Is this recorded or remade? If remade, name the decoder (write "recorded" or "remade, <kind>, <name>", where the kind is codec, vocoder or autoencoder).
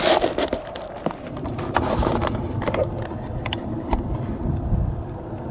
remade, vocoder, BigVGAN v2